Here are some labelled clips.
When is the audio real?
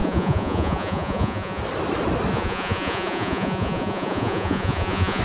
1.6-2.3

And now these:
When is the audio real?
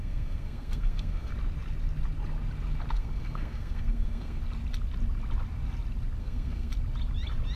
1.3-2.9; 4.4-6.2; 6.7-7.6